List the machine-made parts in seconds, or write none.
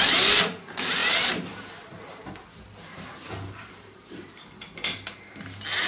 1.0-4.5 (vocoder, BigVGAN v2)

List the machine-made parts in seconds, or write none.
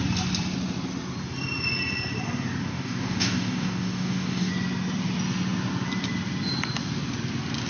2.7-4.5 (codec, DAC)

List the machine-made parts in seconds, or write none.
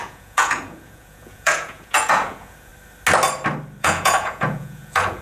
0.0-2.7 (vocoder, Vocos); 3.8-5.2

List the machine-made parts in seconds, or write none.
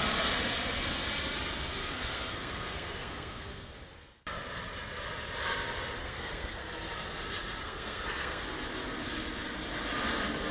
1.8-3.9 (codec, SNAC); 6.0-6.7; 7.6-8.4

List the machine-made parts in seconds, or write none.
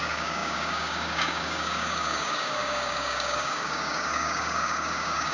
0.0-5.3 (codec, DAC)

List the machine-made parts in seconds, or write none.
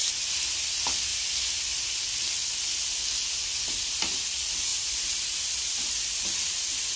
none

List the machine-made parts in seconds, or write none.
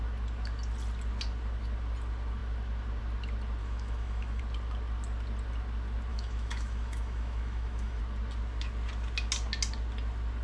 3.6-4.4 (autoencoder, DAC-VAE); 6.1-8.0